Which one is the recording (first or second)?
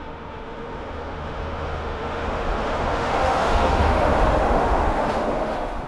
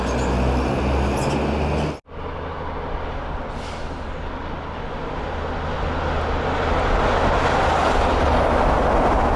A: second